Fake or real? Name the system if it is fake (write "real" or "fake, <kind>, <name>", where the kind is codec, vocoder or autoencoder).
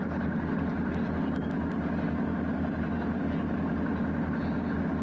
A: real